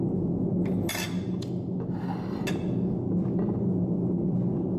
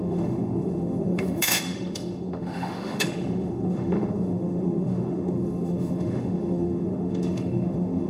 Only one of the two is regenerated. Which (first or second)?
second